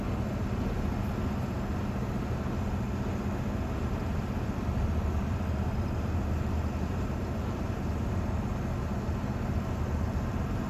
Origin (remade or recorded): recorded